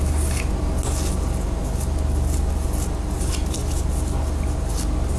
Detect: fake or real real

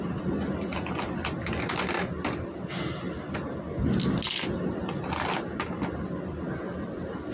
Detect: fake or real real